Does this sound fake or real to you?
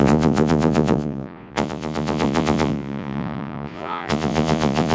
fake